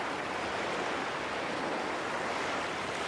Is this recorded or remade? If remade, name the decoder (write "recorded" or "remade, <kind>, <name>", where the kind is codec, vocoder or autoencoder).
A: recorded